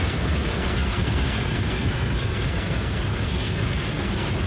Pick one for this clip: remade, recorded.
remade